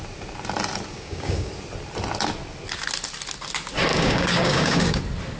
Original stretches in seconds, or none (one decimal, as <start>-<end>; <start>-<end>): 0.0-0.9; 1.5-3.9; 5.0-5.4